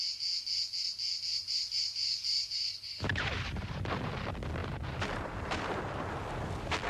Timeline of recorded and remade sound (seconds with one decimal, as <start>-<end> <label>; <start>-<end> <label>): 0.0-1.3 recorded; 1.3-4.1 remade; 4.1-4.6 recorded; 4.6-6.1 remade; 6.1-6.9 recorded

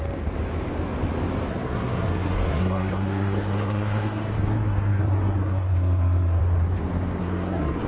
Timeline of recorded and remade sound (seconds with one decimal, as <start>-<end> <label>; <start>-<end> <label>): 0.0-1.5 recorded; 1.5-6.4 remade; 6.4-7.2 recorded; 7.2-7.9 remade